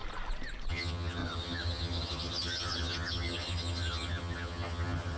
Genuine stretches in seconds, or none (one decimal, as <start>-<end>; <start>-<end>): 0.0-0.7